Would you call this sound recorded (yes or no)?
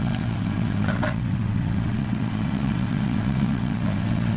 no